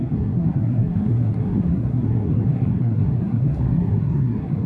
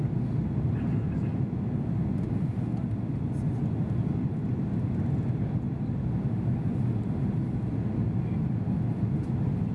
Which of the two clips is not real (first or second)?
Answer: first